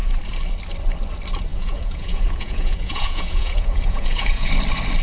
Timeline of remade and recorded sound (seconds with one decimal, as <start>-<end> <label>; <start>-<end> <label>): 0.0-1.5 recorded; 1.5-4.5 remade; 4.5-5.0 recorded